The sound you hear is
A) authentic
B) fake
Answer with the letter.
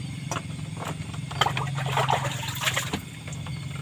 A